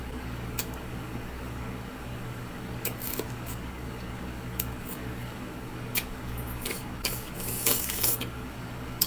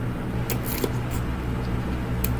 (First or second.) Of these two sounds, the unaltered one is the second